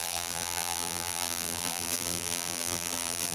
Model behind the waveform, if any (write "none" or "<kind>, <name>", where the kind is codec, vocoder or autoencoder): vocoder, BigVGAN v2